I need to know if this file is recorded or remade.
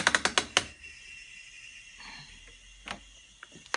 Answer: recorded